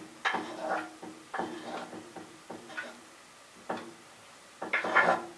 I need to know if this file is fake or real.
real